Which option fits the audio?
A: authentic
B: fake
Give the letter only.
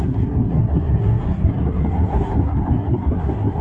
B